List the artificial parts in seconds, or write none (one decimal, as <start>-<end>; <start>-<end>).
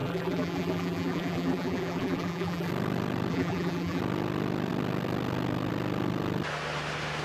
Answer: 0.0-2.7; 3.3-4.0